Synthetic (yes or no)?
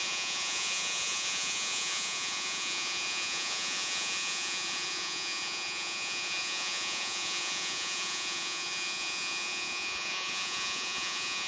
yes